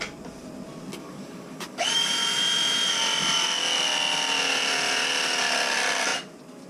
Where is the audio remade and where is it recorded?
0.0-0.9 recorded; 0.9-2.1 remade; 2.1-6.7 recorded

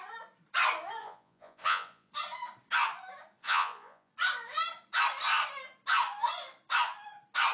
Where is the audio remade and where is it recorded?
0.0-1.0 recorded; 1.0-2.1 remade; 2.1-3.4 recorded; 3.4-4.1 remade; 4.1-7.5 recorded

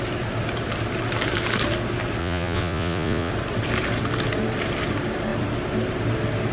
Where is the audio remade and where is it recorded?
0.0-2.2 recorded; 2.2-3.3 remade; 3.3-6.5 recorded

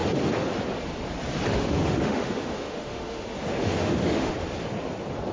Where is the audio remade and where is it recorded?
0.0-1.5 recorded; 1.5-4.3 remade; 4.3-5.3 recorded

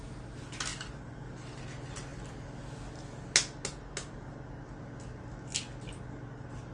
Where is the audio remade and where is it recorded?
0.0-6.7 recorded

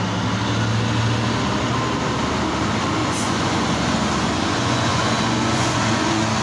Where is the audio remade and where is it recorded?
0.0-3.0 recorded; 3.0-6.4 remade